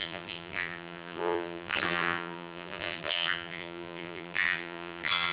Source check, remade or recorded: remade